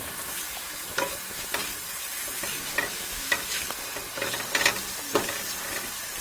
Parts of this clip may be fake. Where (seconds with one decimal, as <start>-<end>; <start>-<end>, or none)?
2.9-3.6